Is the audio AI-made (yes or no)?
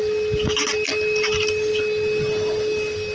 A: no